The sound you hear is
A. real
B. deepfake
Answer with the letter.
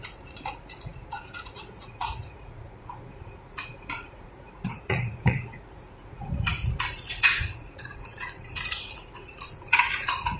B